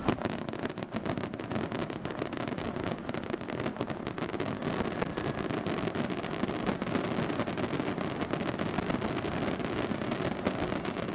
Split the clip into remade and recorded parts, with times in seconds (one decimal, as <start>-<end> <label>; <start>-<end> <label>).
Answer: 0.0-11.1 recorded